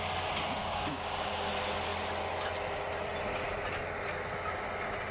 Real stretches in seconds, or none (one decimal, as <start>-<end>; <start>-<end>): 0.0-0.6; 1.5-5.1